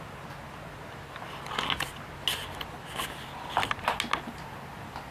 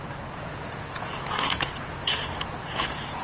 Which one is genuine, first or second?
first